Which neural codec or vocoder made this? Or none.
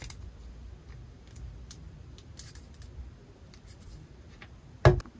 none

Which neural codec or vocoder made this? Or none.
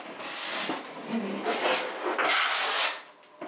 none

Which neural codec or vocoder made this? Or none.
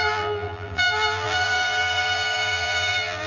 vocoder, BigVGAN v2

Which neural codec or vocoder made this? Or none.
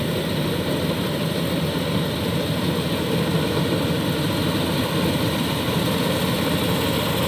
none